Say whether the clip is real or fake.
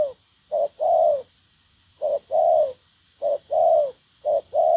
real